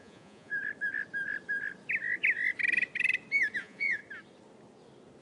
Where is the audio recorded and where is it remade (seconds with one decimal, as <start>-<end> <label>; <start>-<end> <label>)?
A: 0.0-0.5 remade; 0.5-3.6 recorded; 3.6-4.0 remade; 4.0-5.2 recorded